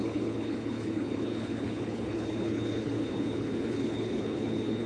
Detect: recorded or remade remade